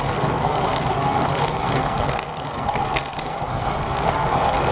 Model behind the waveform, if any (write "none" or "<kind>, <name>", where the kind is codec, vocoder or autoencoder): codec, SNAC